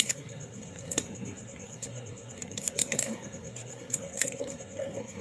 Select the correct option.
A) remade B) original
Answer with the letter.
A